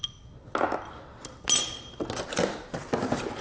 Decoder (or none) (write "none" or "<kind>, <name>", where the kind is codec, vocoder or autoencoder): none